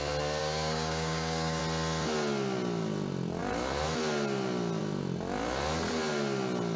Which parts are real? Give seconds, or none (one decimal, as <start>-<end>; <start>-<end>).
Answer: 0.0-0.4; 1.6-6.8